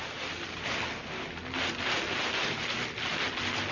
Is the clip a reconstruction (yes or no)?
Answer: no